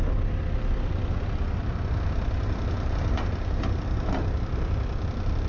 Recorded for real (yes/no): no